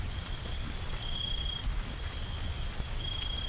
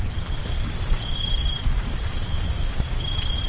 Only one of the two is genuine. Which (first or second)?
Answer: first